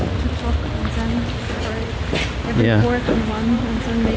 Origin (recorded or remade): recorded